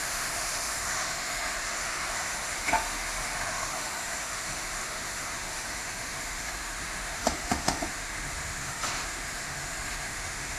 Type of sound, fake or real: fake